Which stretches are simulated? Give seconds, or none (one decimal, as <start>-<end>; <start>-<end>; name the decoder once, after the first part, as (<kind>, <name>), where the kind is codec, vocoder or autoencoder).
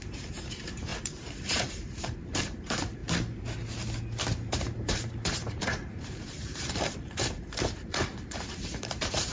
0.0-3.0 (vocoder, BigVGAN v2); 4.5-9.3